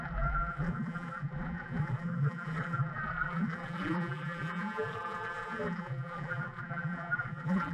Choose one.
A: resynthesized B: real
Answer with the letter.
A